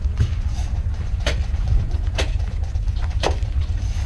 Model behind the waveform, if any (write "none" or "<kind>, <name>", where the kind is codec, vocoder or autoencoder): vocoder, Vocos